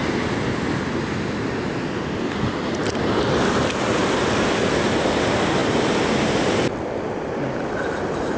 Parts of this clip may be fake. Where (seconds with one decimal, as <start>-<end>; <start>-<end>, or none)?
none